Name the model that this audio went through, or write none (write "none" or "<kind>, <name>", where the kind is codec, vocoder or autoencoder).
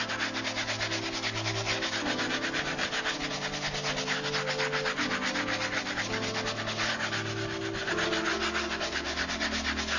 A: none